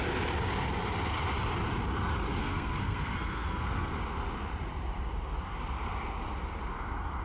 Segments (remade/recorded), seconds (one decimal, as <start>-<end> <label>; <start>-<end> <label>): 0.0-2.4 recorded; 2.4-3.9 remade; 3.9-7.2 recorded